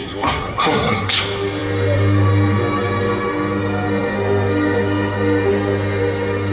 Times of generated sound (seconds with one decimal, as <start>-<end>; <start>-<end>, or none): 0.0-1.2